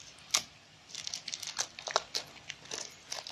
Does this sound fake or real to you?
real